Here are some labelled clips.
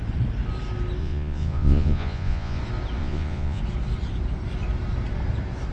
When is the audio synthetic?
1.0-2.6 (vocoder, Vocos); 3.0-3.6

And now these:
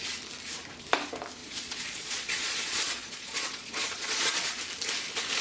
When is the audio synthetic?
1.4-4.6 (vocoder, Vocos)

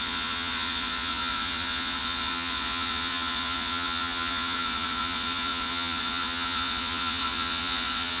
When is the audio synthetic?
0.0-8.2 (vocoder, Vocos)

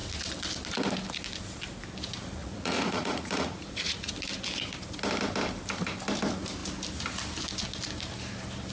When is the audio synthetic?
2.4-4.1 (vocoder, Vocos)